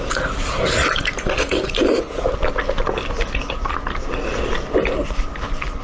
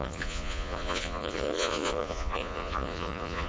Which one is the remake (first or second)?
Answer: second